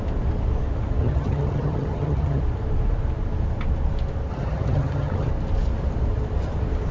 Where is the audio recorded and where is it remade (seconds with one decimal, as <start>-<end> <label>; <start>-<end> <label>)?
0.0-1.0 recorded; 1.0-2.4 remade; 2.4-4.3 recorded; 4.3-5.3 remade; 5.3-6.9 recorded